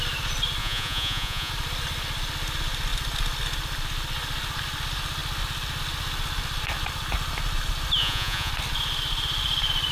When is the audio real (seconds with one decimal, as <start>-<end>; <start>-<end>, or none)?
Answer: 0.0-0.6; 1.5-8.0; 8.5-9.9